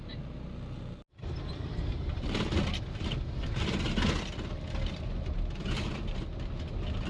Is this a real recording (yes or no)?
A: yes